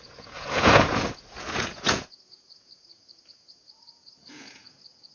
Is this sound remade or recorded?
remade